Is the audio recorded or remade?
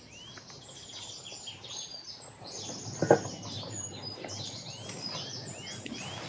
recorded